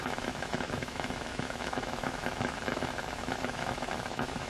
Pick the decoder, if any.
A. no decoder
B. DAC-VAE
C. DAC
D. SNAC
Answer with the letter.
B